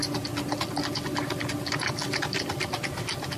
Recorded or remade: recorded